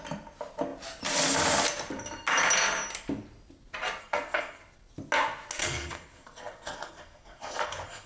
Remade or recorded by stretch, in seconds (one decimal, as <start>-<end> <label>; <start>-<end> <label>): 0.0-4.0 recorded; 4.0-4.6 remade; 4.6-5.6 recorded; 5.6-8.1 remade